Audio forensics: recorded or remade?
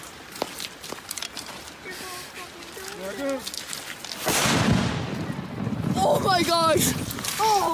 recorded